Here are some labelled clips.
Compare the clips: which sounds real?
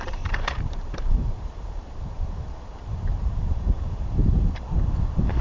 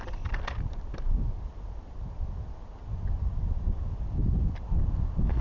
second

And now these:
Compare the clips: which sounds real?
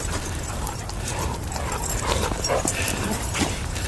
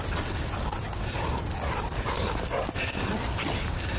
second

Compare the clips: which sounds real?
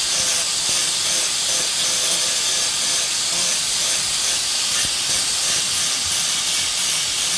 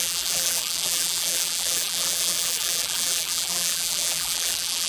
first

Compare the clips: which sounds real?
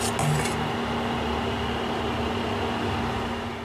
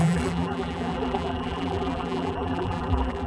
first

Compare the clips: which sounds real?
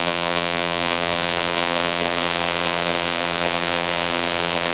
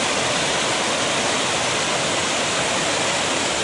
second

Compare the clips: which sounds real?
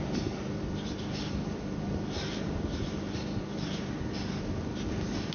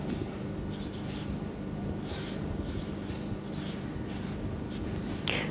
second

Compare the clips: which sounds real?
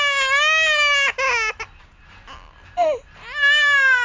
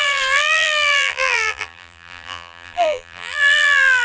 first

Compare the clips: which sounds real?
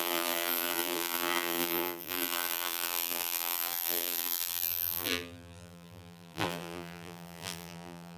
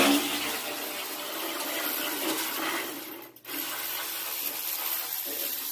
second